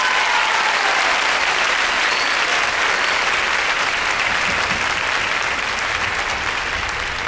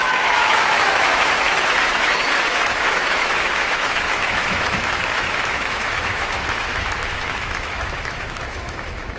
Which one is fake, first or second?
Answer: second